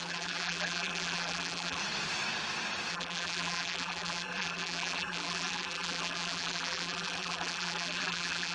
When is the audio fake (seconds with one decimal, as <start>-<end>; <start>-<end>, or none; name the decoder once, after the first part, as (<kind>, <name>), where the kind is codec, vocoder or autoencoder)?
0.0-1.8 (vocoder, BigVGAN v2); 2.9-8.5